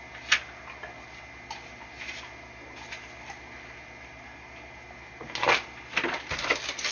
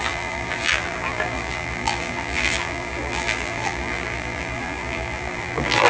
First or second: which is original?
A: first